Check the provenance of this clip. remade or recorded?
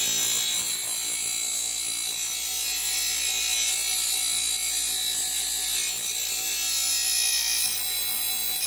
recorded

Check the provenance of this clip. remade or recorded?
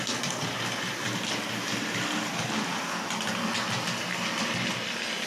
recorded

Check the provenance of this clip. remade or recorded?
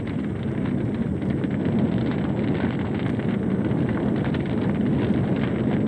recorded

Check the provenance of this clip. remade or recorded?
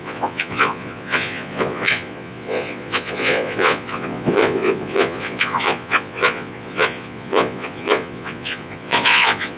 remade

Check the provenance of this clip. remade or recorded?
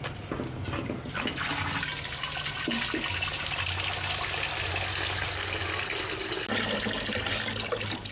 recorded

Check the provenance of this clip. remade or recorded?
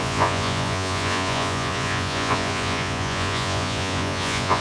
remade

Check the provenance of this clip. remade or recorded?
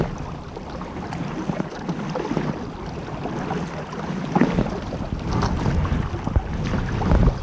recorded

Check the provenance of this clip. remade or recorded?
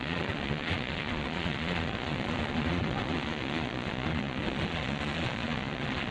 remade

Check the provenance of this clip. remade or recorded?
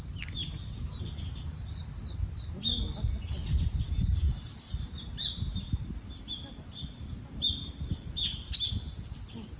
recorded